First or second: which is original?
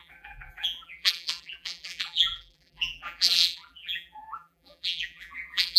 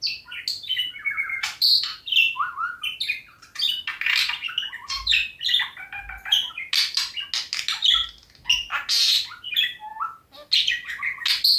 second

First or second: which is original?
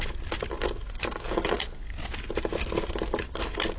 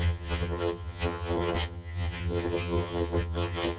first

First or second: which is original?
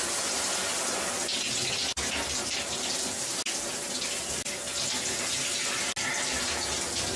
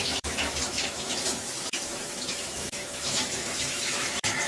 first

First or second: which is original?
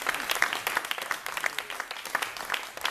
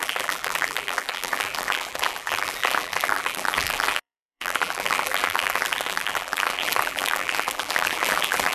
first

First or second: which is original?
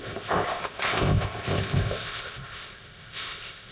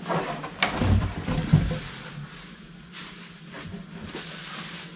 second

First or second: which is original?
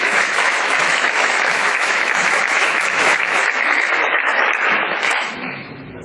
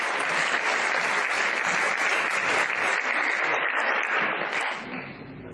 second